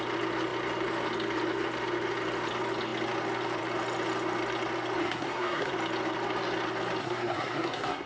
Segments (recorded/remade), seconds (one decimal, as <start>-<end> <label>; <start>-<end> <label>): 0.0-5.0 recorded; 5.0-5.7 remade; 5.7-7.0 recorded; 7.0-8.1 remade